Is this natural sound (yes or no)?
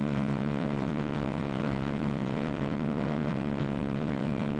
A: no